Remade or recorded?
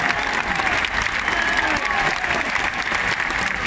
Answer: recorded